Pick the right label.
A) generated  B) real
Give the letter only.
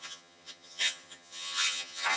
A